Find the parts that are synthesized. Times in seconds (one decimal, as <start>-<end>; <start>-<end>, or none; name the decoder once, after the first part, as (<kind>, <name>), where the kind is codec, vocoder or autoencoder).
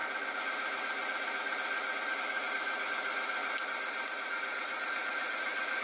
2.1-3.4 (autoencoder, DAC-VAE)